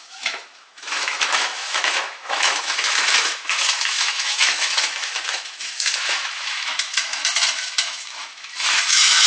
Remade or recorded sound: remade